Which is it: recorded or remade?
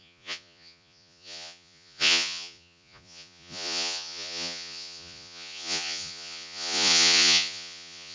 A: remade